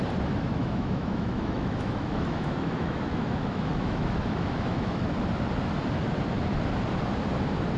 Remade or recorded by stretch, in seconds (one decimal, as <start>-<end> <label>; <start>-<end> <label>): 0.0-0.6 recorded; 0.6-5.1 remade; 5.1-7.8 recorded